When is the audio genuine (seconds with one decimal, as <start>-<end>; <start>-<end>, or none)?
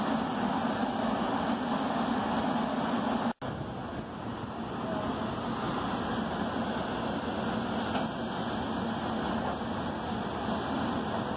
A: 0.0-11.4